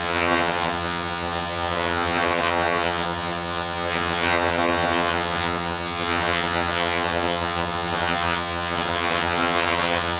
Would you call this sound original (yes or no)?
no